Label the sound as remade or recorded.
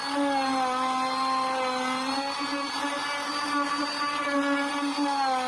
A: recorded